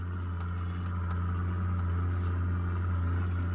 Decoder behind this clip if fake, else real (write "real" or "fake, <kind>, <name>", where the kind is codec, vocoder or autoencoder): real